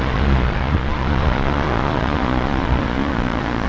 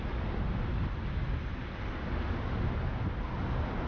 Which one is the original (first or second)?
second